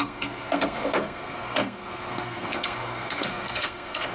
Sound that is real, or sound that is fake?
fake